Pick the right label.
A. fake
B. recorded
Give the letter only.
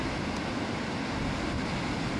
B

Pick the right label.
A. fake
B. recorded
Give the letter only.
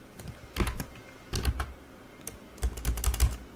B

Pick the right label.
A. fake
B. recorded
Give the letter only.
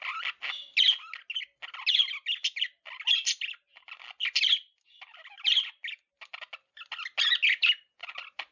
B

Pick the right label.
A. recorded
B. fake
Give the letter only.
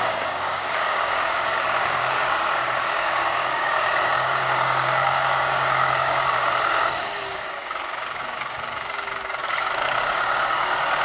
B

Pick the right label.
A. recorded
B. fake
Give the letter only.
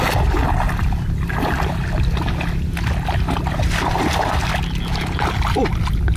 A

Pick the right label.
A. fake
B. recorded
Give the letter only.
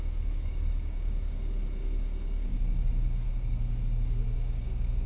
A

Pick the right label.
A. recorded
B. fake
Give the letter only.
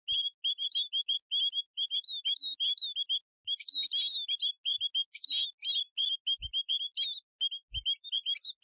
A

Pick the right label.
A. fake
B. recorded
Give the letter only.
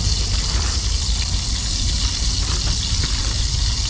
B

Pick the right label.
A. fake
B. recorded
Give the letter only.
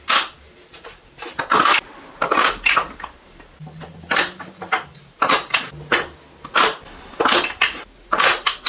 B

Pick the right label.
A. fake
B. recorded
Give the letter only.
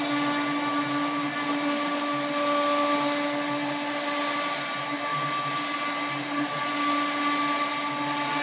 B